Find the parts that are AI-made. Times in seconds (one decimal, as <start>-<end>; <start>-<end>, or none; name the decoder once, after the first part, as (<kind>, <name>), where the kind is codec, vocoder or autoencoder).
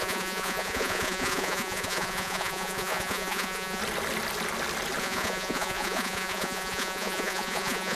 0.0-3.8 (vocoder, Vocos); 5.0-7.9